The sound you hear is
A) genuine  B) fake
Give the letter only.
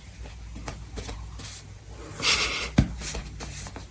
A